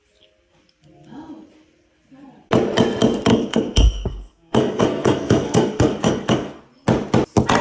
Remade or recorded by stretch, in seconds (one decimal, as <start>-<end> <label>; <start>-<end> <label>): 0.0-3.3 recorded; 3.3-6.6 remade; 6.6-7.6 recorded

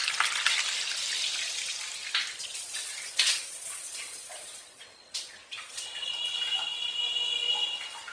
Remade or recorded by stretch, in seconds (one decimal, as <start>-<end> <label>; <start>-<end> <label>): 0.0-2.4 recorded; 2.4-6.1 remade; 6.1-8.1 recorded

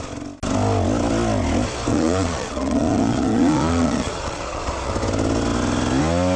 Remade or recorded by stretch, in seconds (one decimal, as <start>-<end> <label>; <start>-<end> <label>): 0.0-1.9 recorded; 1.9-4.9 remade; 4.9-6.4 recorded

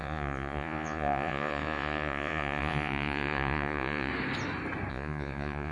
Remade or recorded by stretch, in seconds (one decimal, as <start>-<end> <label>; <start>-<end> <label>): 0.0-4.1 remade; 4.1-4.9 recorded; 4.9-5.7 remade

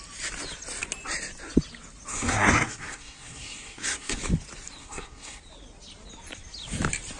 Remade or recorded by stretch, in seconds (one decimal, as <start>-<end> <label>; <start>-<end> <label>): 0.0-2.1 recorded; 2.1-4.2 remade; 4.2-4.8 recorded; 4.8-5.4 remade; 5.4-7.2 recorded